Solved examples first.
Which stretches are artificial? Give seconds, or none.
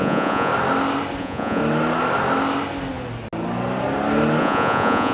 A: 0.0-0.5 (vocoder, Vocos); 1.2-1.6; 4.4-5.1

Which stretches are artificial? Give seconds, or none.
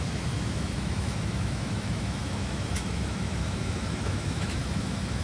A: 0.0-5.2 (autoencoder, DAC-VAE)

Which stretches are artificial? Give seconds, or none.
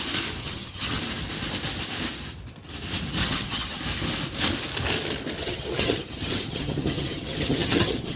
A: 0.4-1.0 (vocoder, HiFi-GAN); 3.2-3.8; 5.4-8.2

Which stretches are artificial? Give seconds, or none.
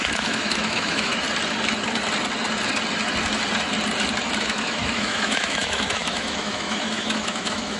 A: 0.0-1.1 (autoencoder, DAC-VAE); 4.4-7.8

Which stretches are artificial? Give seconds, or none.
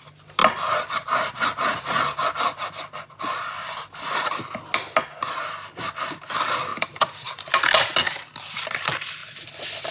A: 6.7-7.5 (vocoder, BigVGAN v2)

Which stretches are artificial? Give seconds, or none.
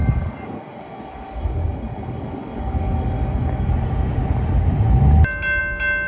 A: 0.0-3.7 (codec, DAC)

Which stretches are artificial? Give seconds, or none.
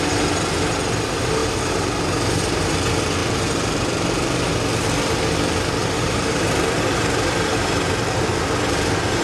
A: 1.4-2.4 (vocoder, BigVGAN v2); 3.2-4.5; 5.8-7.5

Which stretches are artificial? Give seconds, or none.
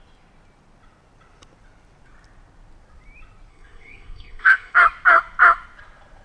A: 3.5-4.8 (codec, SNAC)